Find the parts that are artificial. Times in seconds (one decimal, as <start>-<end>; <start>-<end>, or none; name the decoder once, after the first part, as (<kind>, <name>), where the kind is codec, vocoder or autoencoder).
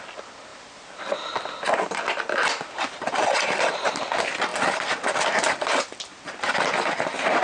0.5-4.0 (vocoder, BigVGAN v2); 4.5-6.3